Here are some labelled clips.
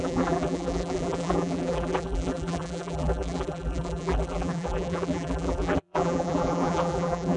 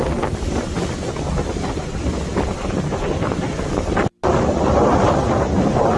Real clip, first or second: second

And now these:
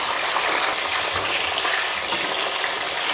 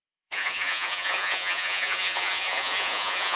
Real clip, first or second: first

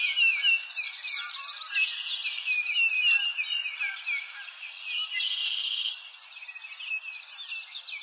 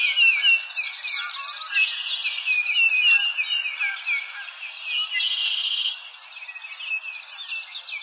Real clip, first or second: second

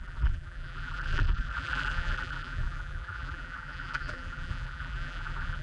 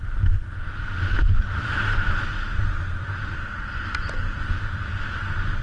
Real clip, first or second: second